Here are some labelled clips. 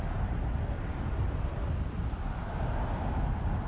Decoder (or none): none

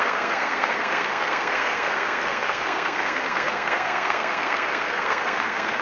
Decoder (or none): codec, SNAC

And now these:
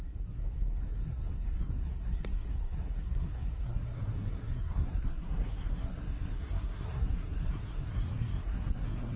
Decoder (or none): codec, SNAC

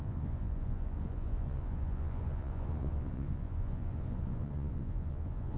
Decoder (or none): vocoder, Vocos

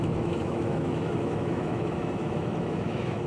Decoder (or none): autoencoder, DAC-VAE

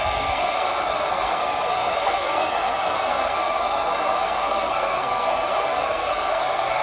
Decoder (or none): codec, SNAC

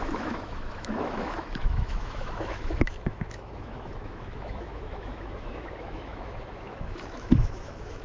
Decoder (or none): autoencoder, DAC-VAE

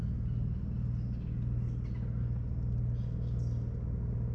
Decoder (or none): none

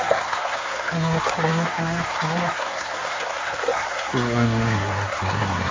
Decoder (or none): codec, SNAC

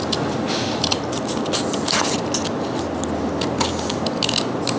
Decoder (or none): none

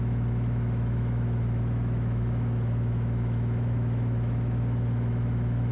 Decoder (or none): autoencoder, DAC-VAE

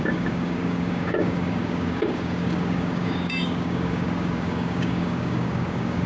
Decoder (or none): codec, DAC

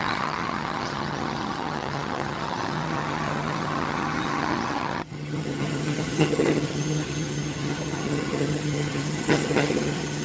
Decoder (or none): vocoder, HiFi-GAN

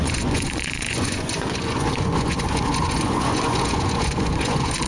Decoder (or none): vocoder, Vocos